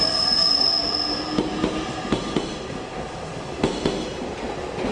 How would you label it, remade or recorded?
recorded